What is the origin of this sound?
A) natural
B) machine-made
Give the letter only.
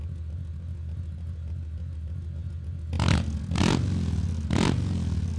A